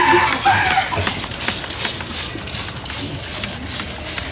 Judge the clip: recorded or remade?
recorded